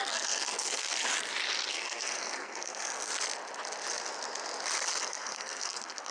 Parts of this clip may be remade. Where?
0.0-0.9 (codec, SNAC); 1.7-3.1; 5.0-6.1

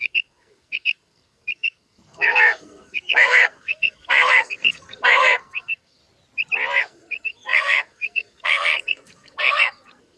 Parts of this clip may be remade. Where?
0.0-6.0 (codec, SNAC); 6.8-10.2

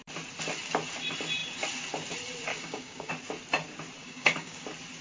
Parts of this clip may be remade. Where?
2.5-3.1 (codec, DAC); 4.0-4.6

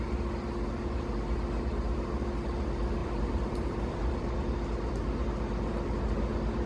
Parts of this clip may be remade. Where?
3.0-4.3 (vocoder, BigVGAN v2)

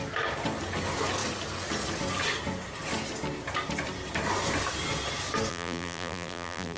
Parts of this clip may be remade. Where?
5.5-6.8 (vocoder, BigVGAN v2)